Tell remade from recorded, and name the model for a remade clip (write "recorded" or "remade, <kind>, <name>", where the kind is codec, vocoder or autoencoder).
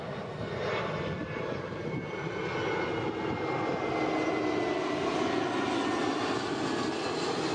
recorded